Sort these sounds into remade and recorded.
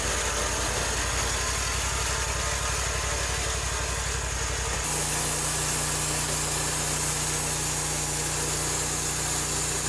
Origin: recorded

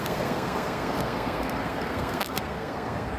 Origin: remade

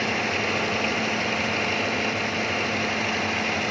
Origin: recorded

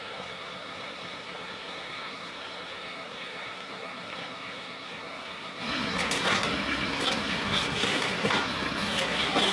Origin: remade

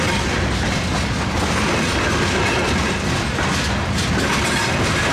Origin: recorded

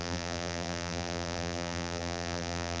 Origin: remade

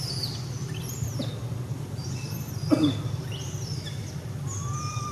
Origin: recorded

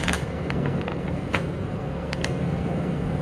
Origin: remade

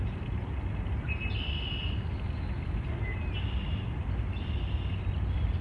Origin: recorded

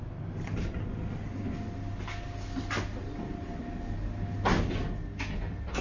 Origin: recorded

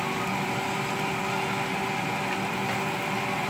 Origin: remade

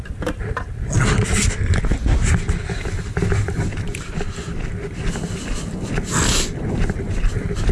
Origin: recorded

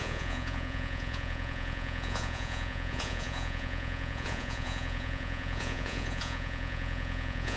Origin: remade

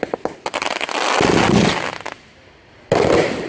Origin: recorded